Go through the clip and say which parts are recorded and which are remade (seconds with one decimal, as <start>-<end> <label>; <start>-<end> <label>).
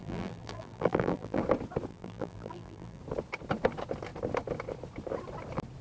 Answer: 0.0-1.4 remade; 1.4-1.9 recorded; 1.9-3.0 remade; 3.0-5.8 recorded